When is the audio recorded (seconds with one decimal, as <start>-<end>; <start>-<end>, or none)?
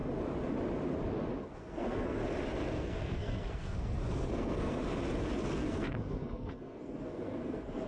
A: 0.0-1.4; 2.2-2.7; 4.8-5.6